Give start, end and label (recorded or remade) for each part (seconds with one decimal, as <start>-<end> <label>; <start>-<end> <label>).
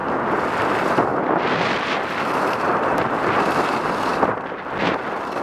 0.0-5.4 recorded